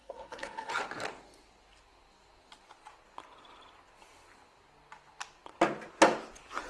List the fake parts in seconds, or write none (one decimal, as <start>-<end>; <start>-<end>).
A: 0.0-0.7